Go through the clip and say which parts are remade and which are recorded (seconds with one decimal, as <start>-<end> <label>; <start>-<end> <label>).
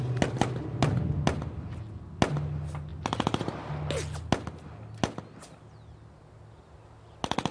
0.0-7.5 recorded